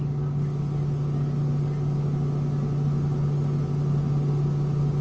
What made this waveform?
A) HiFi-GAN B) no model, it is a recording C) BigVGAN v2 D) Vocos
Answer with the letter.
B